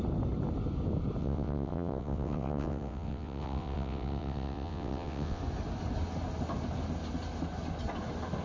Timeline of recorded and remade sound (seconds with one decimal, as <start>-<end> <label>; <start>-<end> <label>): 0.0-1.2 recorded; 1.2-5.4 remade; 5.4-8.4 recorded